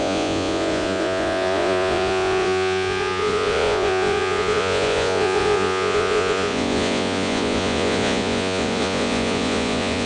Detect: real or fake fake